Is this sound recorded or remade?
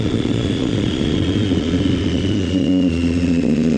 remade